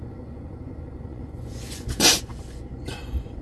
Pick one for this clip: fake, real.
fake